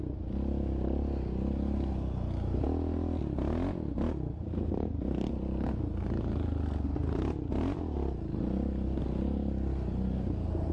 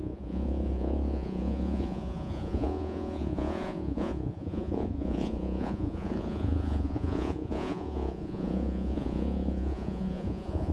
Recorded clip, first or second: first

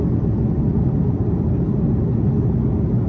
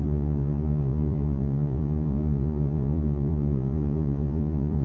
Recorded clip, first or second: first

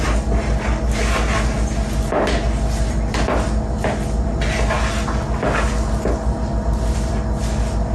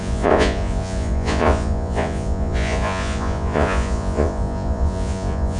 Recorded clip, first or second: first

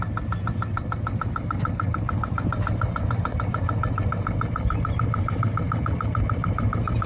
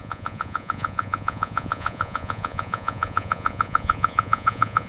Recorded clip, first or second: first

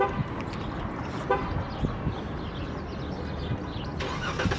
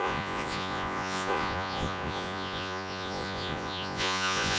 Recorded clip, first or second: first